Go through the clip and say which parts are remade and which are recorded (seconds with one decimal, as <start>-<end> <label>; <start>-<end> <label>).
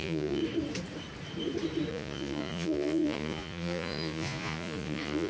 0.0-0.4 remade; 0.4-1.9 recorded; 1.9-5.3 remade